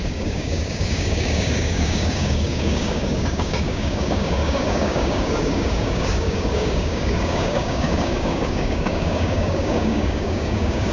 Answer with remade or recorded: remade